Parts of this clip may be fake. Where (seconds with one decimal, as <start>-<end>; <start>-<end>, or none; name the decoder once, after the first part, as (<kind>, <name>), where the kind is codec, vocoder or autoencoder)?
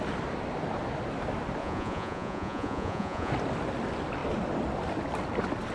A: 1.6-3.3 (vocoder, Vocos)